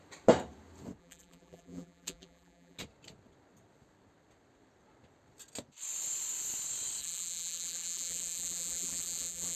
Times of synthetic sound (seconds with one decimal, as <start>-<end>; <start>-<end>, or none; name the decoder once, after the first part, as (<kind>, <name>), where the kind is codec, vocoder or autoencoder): 1.0-2.8 (vocoder, BigVGAN v2); 7.0-9.6